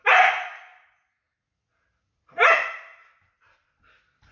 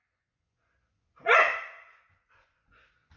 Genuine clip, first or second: first